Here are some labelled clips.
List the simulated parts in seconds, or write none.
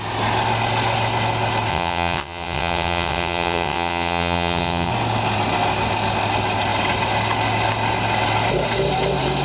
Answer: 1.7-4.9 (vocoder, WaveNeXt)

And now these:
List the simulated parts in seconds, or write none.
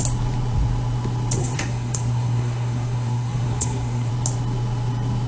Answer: 1.4-4.1 (codec, SNAC)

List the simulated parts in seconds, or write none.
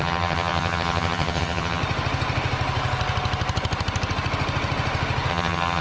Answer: 0.0-1.8 (vocoder, HiFi-GAN); 5.3-5.8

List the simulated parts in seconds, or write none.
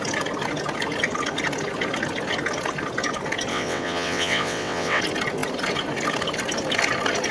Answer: 3.5-5.0 (vocoder, WaveNeXt)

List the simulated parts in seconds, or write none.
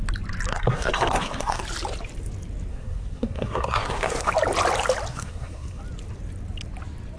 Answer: 0.5-1.6 (codec, SNAC); 2.7-4.3; 5.1-5.8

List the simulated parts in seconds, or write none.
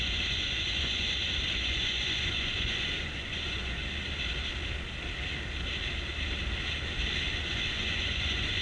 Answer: 0.0-3.8 (vocoder, Vocos); 7.5-8.6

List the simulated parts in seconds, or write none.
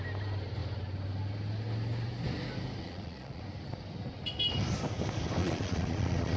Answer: 2.8-3.4 (vocoder, Vocos); 5.4-6.4